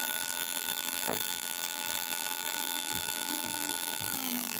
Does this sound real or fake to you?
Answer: fake